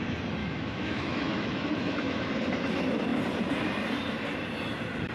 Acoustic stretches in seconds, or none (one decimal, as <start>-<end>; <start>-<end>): 0.0-0.4; 2.3-5.1